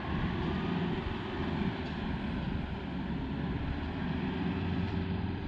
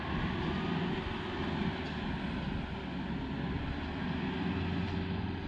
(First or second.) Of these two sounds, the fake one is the first